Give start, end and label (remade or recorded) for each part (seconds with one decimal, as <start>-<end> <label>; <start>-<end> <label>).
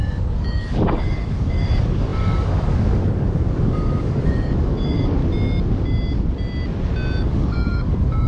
0.0-5.2 remade; 5.2-7.2 recorded; 7.2-8.3 remade